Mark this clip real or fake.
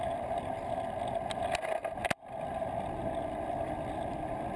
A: real